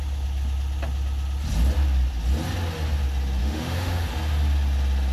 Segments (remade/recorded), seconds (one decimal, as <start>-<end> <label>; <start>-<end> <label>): 0.0-3.4 recorded; 3.4-4.1 remade; 4.1-5.1 recorded